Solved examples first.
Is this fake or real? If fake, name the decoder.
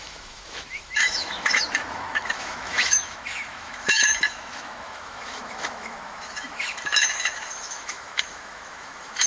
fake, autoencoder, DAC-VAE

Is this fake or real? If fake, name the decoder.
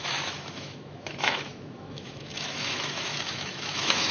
fake, autoencoder, DAC-VAE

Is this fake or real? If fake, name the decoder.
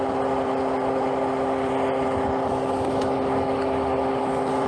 real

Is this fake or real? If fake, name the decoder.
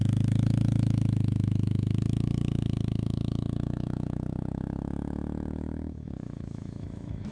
fake, autoencoder, DAC-VAE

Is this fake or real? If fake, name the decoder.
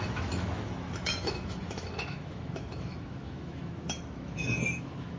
fake, autoencoder, DAC-VAE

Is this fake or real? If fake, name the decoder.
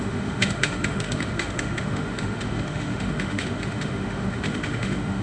fake, autoencoder, DAC-VAE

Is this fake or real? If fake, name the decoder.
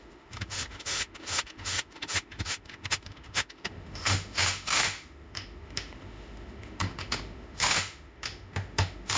fake, autoencoder, DAC-VAE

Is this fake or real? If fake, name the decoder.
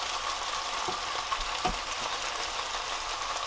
real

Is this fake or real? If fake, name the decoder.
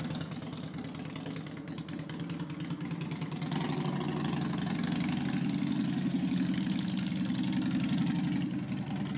real